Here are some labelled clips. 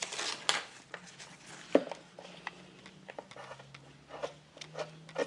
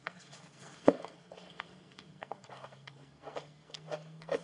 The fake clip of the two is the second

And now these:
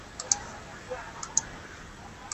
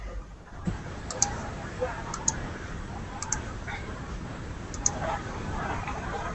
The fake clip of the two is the second